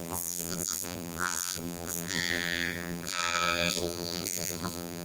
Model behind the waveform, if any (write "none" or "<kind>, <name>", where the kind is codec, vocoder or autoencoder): vocoder, BigVGAN v2